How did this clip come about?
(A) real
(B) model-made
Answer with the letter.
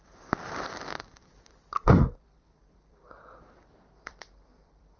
B